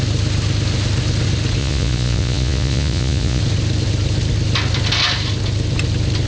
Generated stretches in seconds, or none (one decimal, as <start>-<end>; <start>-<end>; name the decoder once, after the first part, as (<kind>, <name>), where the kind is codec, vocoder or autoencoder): 1.6-3.4 (vocoder, Vocos)